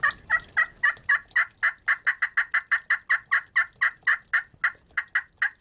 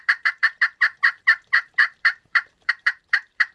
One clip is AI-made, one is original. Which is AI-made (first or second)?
second